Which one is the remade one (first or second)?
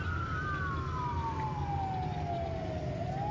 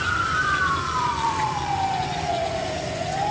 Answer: second